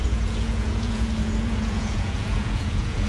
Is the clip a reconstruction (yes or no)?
yes